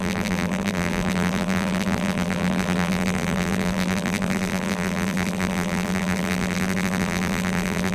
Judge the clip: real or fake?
fake